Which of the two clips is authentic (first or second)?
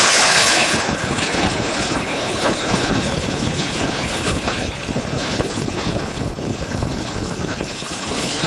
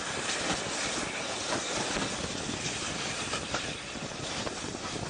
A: second